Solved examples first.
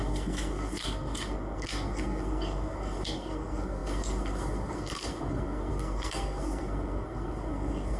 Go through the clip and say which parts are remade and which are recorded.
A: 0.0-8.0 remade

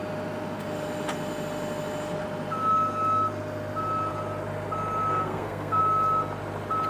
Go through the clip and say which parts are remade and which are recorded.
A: 0.0-5.1 recorded; 5.1-5.8 remade; 5.8-6.9 recorded

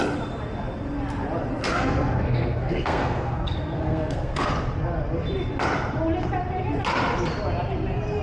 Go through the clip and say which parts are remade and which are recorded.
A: 0.0-1.6 recorded; 1.6-4.5 remade; 4.5-8.2 recorded

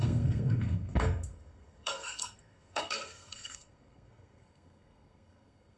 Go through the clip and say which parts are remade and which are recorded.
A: 0.0-5.8 remade

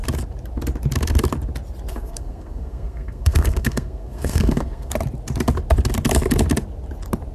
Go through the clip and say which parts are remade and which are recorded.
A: 0.0-1.9 recorded; 1.9-4.9 remade; 4.9-7.3 recorded

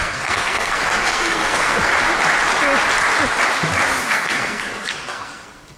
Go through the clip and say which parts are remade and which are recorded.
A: 0.0-1.9 remade; 1.9-4.0 recorded; 4.0-5.8 remade